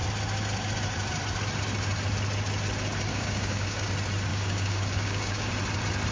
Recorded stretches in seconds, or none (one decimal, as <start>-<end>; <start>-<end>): 0.0-3.1; 3.9-4.3; 5.5-6.1